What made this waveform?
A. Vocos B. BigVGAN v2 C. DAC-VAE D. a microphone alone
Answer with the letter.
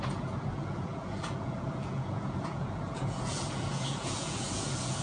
A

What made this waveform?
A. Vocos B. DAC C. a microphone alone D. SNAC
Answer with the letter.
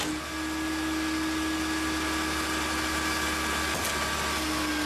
C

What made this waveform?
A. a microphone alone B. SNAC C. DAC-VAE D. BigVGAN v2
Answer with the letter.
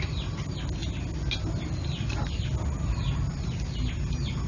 A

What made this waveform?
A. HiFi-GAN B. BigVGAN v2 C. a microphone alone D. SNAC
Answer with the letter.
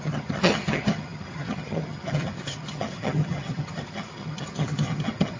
A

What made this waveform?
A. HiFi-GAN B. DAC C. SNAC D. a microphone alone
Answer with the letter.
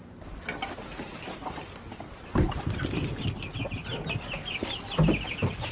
D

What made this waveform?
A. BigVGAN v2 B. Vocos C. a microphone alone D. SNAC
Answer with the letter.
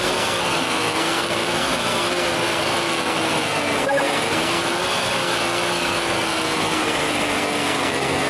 D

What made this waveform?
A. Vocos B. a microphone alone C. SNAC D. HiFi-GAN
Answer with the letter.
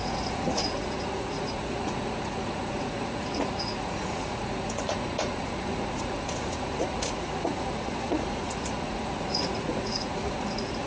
A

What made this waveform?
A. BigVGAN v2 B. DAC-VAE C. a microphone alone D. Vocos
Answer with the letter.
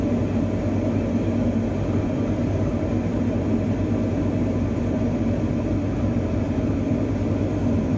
C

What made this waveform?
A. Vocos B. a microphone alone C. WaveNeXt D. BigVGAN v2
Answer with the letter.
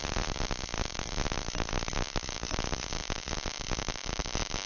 B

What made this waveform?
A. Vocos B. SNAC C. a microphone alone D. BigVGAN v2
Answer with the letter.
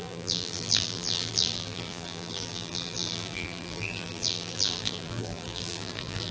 D